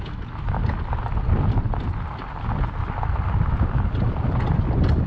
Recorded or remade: recorded